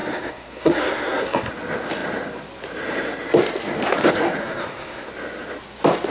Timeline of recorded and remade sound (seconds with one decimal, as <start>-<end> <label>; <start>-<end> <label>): 0.0-1.5 remade; 1.5-4.4 recorded; 4.4-5.1 remade; 5.1-6.1 recorded